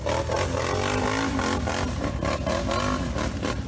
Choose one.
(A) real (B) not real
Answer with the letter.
A